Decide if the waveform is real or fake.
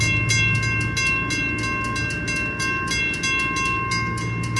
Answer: real